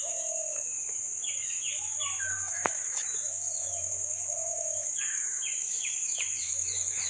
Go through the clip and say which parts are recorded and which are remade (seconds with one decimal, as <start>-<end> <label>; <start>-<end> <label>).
0.0-7.1 remade